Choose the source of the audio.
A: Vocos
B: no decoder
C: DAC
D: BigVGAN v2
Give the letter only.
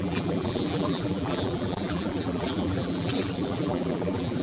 D